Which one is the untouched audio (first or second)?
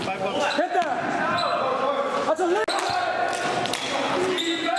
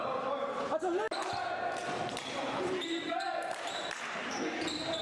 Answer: first